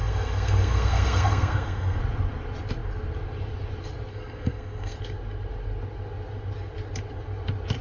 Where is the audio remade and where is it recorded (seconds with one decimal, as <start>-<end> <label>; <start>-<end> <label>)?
0.0-2.0 remade; 2.0-4.1 recorded; 4.1-5.0 remade; 5.0-7.8 recorded